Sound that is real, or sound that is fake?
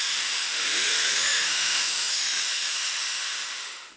fake